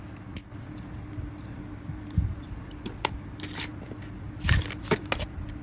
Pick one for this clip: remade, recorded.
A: recorded